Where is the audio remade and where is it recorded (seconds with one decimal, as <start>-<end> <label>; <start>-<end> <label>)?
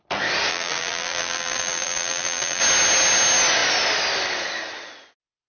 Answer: 0.0-0.5 recorded; 0.5-2.6 remade; 2.6-5.5 recorded